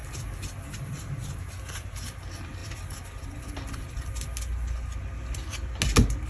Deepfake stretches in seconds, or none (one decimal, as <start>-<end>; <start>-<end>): none